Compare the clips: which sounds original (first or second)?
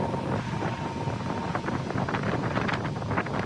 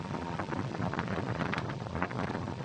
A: first